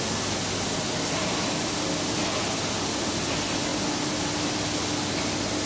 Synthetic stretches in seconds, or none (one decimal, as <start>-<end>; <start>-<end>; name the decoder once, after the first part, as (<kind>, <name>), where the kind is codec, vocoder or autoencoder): none